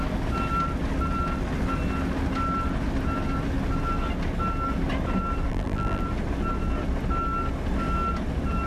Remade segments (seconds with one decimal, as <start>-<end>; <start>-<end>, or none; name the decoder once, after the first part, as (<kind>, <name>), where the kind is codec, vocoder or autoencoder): 5.5-6.0 (vocoder, BigVGAN v2)